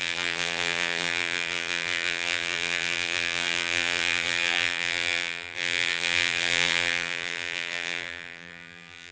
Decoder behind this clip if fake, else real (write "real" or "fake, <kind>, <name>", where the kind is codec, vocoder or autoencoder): fake, vocoder, BigVGAN v2